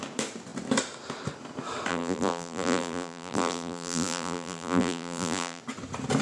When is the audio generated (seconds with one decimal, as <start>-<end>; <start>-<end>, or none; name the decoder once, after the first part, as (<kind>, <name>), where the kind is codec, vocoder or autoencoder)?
1.9-5.6 (vocoder, BigVGAN v2)